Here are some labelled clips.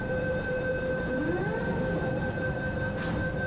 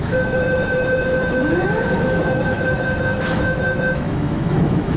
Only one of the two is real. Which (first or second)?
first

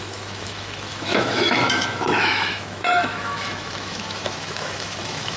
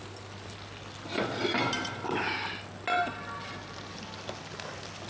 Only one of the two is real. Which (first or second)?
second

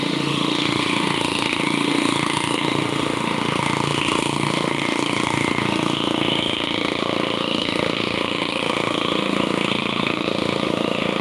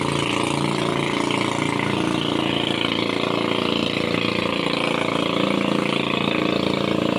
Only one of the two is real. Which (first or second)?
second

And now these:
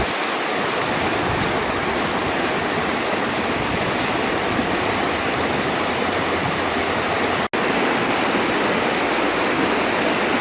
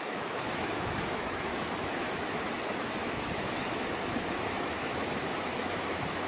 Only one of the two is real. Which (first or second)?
first